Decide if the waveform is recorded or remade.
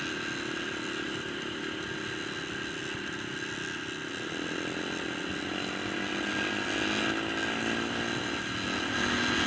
recorded